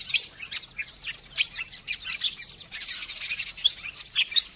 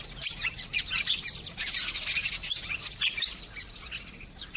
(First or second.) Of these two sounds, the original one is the first